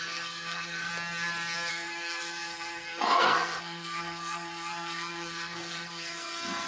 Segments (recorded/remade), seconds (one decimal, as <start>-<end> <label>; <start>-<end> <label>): 0.0-0.9 remade; 0.9-1.7 recorded; 1.7-6.7 remade